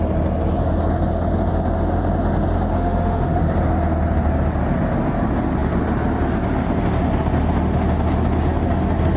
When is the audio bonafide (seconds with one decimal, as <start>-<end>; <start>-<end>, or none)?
0.0-2.7; 3.4-9.2